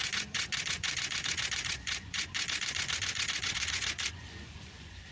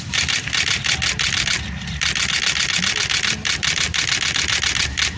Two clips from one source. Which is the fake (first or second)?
first